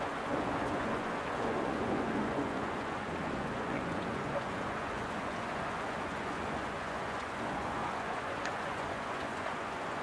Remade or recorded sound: remade